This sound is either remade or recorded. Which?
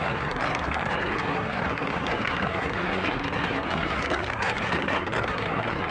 remade